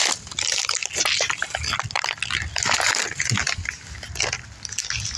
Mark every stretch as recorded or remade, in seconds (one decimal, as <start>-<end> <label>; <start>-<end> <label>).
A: 0.0-5.2 recorded